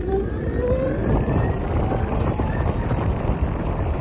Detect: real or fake fake